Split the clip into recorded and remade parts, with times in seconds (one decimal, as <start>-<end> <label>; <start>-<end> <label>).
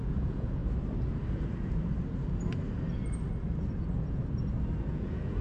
0.0-0.6 remade; 0.6-3.8 recorded; 3.8-4.2 remade; 4.2-4.9 recorded; 4.9-5.4 remade